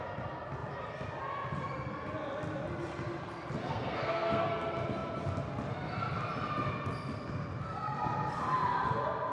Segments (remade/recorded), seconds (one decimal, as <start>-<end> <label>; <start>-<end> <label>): 0.0-3.6 recorded; 3.6-4.5 remade; 4.5-9.3 recorded